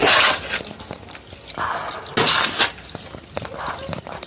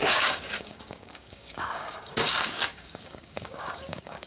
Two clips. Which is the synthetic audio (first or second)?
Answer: second